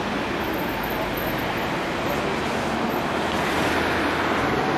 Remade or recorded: recorded